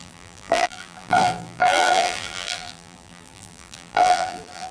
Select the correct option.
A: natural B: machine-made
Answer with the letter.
B